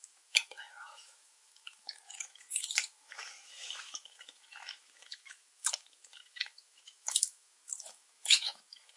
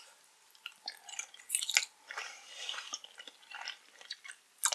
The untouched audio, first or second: second